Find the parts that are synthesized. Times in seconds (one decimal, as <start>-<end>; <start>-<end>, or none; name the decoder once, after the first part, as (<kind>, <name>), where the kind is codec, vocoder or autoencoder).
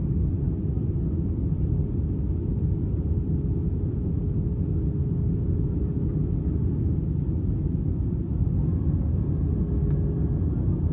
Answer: 3.6-4.2 (vocoder, Vocos); 5.0-6.1